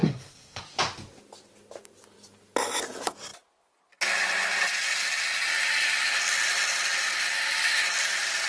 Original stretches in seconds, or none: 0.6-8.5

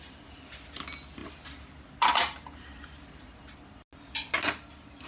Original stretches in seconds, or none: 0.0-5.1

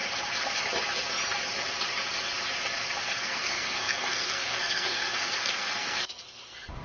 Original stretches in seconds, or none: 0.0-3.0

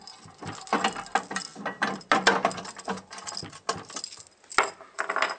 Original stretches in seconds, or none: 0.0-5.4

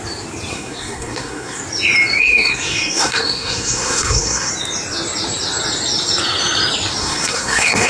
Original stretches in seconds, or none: 0.0-0.5; 1.6-2.2; 4.5-7.0

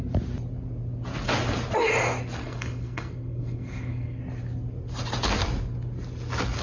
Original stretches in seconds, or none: 0.0-2.4; 4.2-6.6